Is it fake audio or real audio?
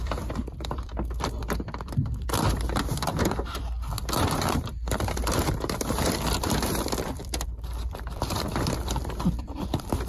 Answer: fake